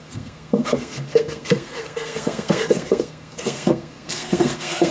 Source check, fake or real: fake